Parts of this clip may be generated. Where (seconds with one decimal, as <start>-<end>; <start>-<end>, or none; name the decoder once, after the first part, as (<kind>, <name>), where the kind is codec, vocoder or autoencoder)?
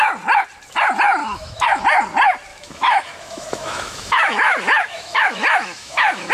1.2-1.8 (autoencoder, DAC-VAE); 2.5-6.3